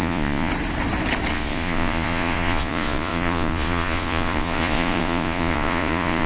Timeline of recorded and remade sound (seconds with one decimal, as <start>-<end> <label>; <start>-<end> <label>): 0.0-0.5 remade; 0.5-1.3 recorded; 1.3-6.3 remade